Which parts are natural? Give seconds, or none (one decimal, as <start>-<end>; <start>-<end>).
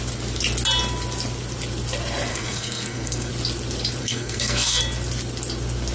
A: 0.0-2.3; 3.3-4.0; 4.8-5.9